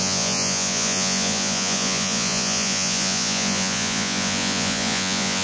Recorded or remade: remade